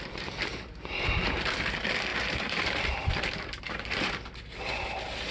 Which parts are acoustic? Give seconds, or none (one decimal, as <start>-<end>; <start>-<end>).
0.0-2.1; 4.1-5.3